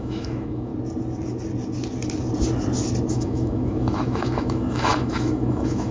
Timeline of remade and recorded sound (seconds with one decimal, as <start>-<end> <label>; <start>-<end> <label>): 0.0-0.7 remade; 0.7-3.1 recorded; 3.1-5.9 remade

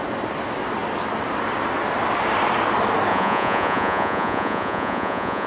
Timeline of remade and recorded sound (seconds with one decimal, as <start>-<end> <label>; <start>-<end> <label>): 0.0-3.1 recorded; 3.1-5.5 remade

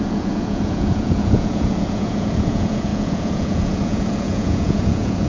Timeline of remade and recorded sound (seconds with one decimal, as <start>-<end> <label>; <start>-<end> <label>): 0.0-5.3 remade